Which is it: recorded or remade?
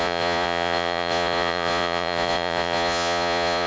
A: remade